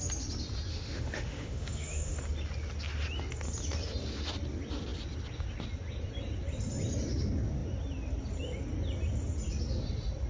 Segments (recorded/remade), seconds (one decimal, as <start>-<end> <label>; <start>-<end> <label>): 0.0-0.7 recorded; 0.7-2.2 remade; 2.2-10.3 recorded